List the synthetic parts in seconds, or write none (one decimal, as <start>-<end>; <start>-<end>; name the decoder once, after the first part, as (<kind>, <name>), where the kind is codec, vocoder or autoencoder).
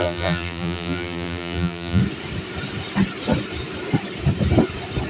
0.0-2.0 (vocoder, BigVGAN v2)